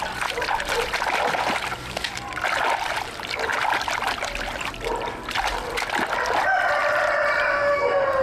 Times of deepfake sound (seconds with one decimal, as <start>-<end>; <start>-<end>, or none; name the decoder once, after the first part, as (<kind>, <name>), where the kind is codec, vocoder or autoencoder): none